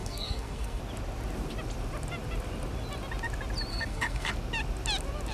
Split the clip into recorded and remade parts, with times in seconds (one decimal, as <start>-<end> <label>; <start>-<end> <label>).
0.0-0.8 remade; 0.8-3.7 recorded; 3.7-4.3 remade; 4.3-5.3 recorded